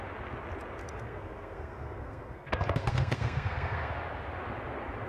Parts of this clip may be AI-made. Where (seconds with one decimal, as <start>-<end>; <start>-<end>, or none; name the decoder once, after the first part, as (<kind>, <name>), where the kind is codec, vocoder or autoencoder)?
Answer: 0.8-3.9 (codec, SNAC)